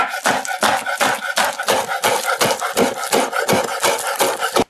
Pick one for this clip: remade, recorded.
recorded